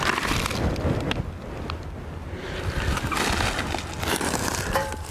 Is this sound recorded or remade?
recorded